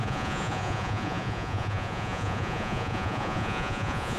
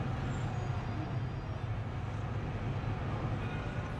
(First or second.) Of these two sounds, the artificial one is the first